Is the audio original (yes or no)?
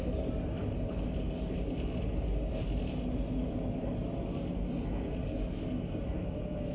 yes